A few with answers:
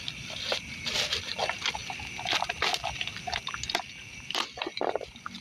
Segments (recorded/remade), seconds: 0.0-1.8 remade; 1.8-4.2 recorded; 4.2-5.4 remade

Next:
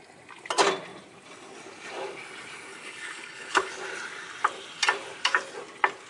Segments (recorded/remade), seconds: 0.0-2.7 recorded; 2.7-3.7 remade; 3.7-6.1 recorded

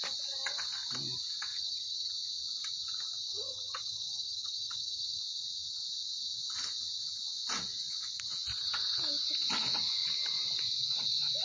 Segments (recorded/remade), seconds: 0.0-1.5 recorded; 1.5-2.1 remade; 2.1-3.3 recorded; 3.3-5.2 remade; 5.2-11.4 recorded